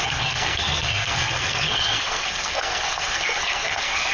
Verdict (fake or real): fake